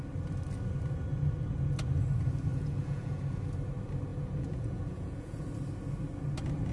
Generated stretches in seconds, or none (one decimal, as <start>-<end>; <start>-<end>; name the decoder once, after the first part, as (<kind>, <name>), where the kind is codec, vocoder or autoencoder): 2.5-3.2 (vocoder, Vocos); 4.1-5.4